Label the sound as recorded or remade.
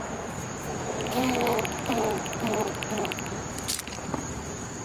remade